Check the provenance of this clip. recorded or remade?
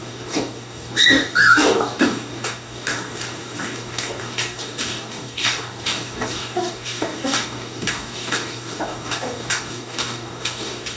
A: remade